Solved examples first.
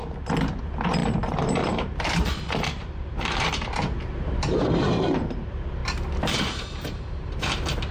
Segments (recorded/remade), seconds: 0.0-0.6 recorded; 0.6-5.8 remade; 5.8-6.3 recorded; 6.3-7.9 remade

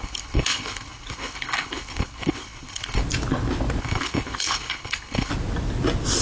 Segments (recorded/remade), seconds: 0.0-3.0 remade; 3.0-3.8 recorded; 3.8-5.3 remade; 5.3-6.2 recorded

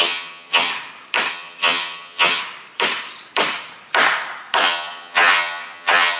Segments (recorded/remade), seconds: 0.0-0.7 remade; 0.7-1.3 recorded; 1.3-2.4 remade; 2.4-4.6 recorded; 4.6-6.2 remade

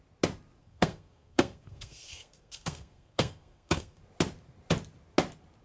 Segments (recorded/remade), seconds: 0.0-0.6 recorded; 0.6-4.0 remade; 4.0-5.6 recorded

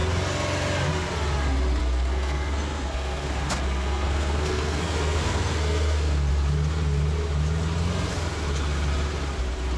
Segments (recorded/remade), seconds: 0.0-1.8 recorded; 1.8-6.3 remade; 6.3-9.8 recorded

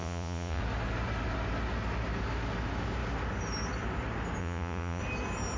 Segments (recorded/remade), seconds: 0.0-0.6 remade; 0.6-4.4 recorded; 4.4-5.0 remade; 5.0-5.6 recorded

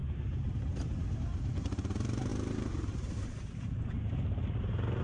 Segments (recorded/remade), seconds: 0.0-5.0 remade